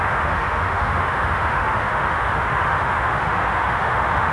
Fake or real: fake